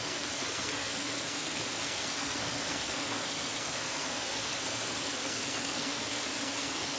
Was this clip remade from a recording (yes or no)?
yes